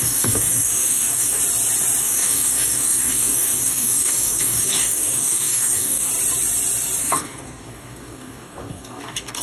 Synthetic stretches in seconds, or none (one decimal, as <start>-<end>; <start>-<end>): 0.0-1.4; 2.0-6.1; 7.0-9.4

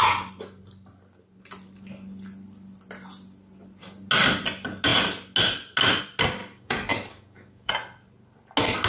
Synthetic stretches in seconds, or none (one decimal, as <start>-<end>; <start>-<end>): 6.4-7.7

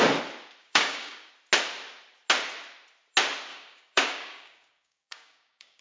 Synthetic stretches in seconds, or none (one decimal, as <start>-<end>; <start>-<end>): 0.6-1.3; 3.5-5.8

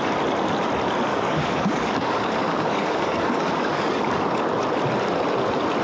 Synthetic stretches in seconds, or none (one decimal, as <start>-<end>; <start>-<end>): 1.1-4.4

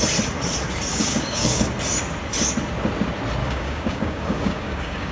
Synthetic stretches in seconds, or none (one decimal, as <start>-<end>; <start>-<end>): 0.9-1.7; 3.4-5.1

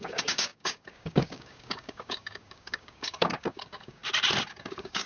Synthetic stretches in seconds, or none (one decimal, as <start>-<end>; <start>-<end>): 0.0-4.0; 4.5-5.1